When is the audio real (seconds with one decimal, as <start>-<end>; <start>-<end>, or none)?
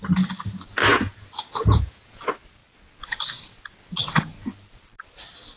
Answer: 0.0-0.9; 2.2-5.6